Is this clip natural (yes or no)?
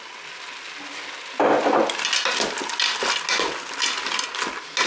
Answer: yes